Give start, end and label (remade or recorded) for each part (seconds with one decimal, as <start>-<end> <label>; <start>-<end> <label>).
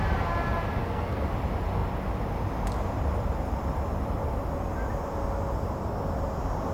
0.0-0.8 recorded; 0.8-1.3 remade; 1.3-6.7 recorded